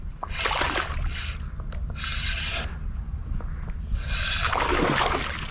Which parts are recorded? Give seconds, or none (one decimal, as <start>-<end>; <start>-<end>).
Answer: 0.0-5.5